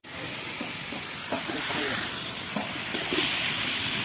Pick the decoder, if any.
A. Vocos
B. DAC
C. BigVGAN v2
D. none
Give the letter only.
D